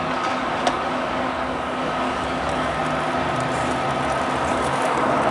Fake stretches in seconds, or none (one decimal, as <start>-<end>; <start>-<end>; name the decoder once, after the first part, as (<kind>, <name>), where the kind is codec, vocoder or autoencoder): 0.0-2.8 (codec, DAC); 4.5-5.3